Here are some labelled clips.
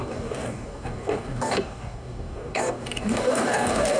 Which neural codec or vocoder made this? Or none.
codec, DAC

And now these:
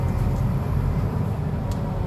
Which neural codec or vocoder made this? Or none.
vocoder, BigVGAN v2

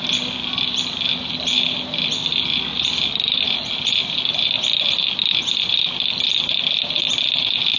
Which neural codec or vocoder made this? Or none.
none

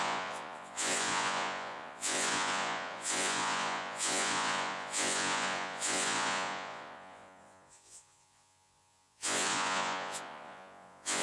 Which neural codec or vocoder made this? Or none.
vocoder, Vocos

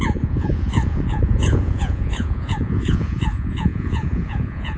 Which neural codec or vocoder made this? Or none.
vocoder, Vocos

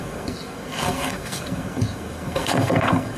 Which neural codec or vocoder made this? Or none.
codec, SNAC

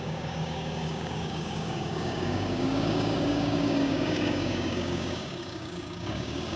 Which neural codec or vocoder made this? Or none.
codec, DAC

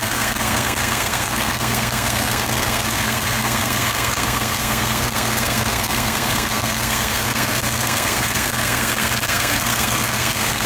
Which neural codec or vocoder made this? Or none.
codec, SNAC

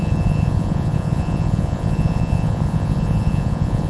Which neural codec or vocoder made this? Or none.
vocoder, Vocos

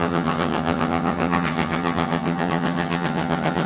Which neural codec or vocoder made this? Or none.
vocoder, HiFi-GAN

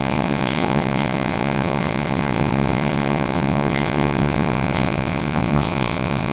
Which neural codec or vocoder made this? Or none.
vocoder, WaveNeXt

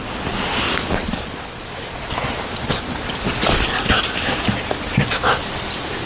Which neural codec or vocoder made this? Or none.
none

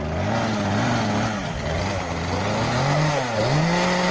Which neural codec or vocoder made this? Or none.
none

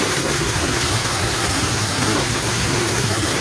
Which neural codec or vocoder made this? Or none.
codec, SNAC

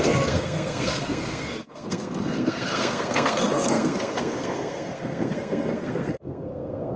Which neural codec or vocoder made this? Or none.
codec, SNAC